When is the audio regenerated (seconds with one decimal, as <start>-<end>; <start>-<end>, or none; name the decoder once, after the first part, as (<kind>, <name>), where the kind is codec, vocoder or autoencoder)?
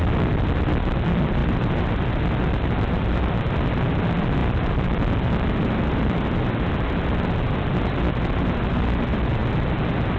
1.4-2.1 (vocoder, BigVGAN v2)